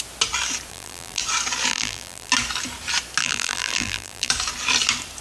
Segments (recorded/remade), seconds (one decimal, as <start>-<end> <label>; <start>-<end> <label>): 0.0-0.7 recorded; 0.7-1.2 remade; 1.2-1.7 recorded; 1.7-2.3 remade; 2.3-3.2 recorded; 3.2-4.3 remade; 4.3-5.2 recorded